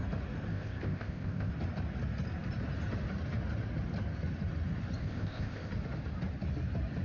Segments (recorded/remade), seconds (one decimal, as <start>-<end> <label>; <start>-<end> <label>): 0.0-0.5 recorded; 0.5-1.5 remade; 1.5-5.0 recorded; 5.0-5.7 remade; 5.7-7.0 recorded